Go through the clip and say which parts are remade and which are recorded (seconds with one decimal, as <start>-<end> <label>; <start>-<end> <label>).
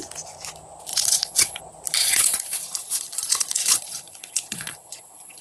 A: 0.0-0.9 recorded; 0.9-1.6 remade; 1.6-2.0 recorded; 2.0-5.4 remade